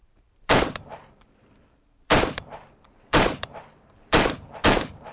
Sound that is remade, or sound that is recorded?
remade